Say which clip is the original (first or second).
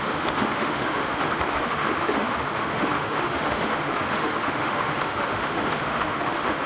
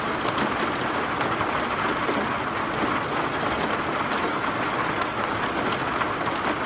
second